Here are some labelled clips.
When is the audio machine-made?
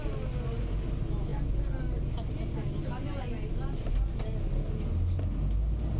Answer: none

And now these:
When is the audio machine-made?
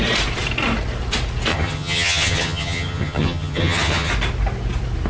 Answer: 1.5-4.1 (vocoder, HiFi-GAN)